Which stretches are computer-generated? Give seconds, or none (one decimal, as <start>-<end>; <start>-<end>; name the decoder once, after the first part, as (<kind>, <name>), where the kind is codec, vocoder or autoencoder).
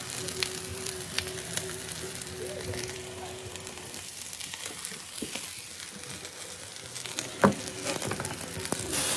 0.7-4.8 (vocoder, BigVGAN v2)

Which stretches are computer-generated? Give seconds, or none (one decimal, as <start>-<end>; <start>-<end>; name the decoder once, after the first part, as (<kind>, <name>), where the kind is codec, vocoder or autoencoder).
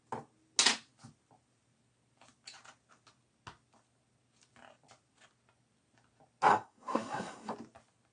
6.5-7.5 (codec, SNAC)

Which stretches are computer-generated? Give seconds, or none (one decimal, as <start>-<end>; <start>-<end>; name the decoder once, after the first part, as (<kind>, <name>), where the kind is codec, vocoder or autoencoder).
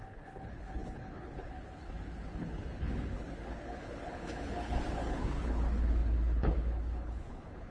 0.0-7.7 (codec, HILCodec)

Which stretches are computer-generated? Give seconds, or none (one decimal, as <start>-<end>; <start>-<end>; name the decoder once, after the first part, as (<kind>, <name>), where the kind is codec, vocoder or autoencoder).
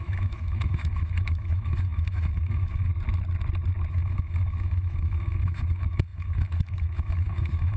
0.0-2.9 (autoencoder, DAC-VAE); 3.9-7.8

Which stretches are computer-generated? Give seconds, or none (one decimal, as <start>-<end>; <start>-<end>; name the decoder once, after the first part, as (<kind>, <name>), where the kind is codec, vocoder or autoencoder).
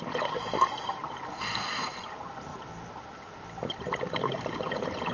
none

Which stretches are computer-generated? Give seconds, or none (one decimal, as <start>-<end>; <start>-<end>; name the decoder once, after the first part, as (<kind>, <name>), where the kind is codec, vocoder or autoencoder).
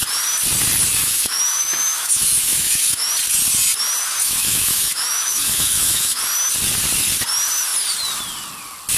1.0-3.1 (autoencoder, DAC-VAE); 4.2-6.2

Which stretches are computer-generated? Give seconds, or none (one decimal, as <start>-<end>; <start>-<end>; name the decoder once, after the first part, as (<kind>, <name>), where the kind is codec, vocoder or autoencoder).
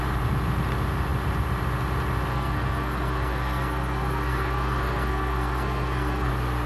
2.3-6.3 (codec, SNAC)